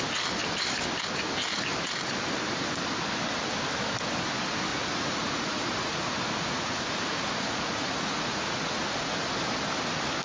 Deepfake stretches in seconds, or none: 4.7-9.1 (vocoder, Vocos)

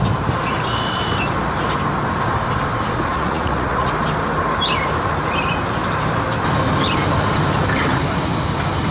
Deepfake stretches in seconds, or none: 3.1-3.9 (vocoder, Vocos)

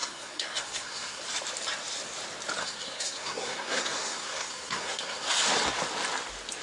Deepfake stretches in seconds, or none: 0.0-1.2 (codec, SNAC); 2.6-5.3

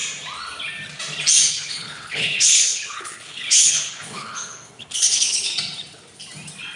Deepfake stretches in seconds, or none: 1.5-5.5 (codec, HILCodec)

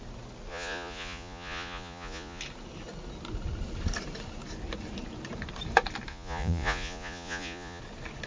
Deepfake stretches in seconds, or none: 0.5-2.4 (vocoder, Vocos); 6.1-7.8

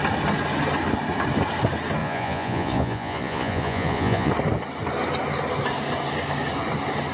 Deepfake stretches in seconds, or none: 2.0-4.3 (vocoder, Vocos)

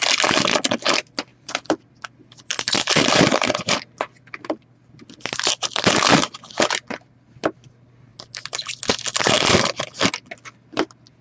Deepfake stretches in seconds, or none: 1.3-2.0 (vocoder, BigVGAN v2); 8.1-8.8

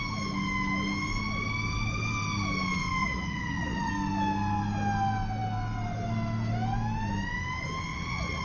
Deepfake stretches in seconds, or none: 3.0-3.9 (vocoder, Vocos); 7.9-8.4